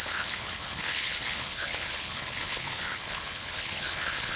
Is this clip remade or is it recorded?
remade